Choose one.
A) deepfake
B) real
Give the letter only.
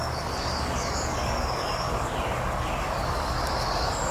A